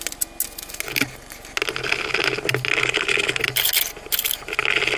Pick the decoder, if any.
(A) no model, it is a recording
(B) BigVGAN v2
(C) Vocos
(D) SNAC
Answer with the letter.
A